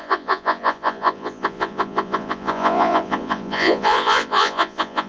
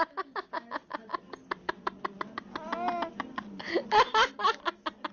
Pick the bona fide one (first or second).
second